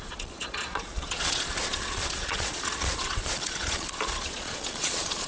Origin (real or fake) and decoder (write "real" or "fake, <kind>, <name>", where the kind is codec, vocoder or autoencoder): fake, vocoder, Vocos